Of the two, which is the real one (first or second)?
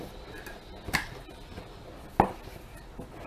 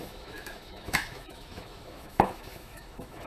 first